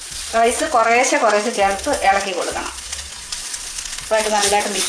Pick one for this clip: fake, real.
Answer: fake